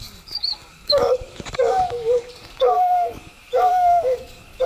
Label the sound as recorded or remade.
remade